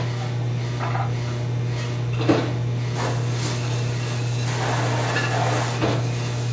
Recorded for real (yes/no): yes